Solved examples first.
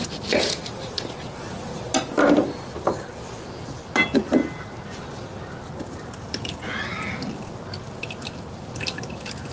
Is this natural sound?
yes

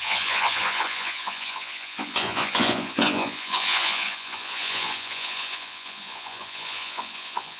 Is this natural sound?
no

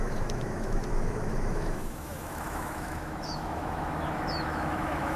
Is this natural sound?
no